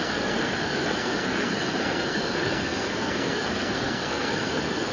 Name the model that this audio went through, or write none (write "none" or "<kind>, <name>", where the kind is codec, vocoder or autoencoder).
codec, SNAC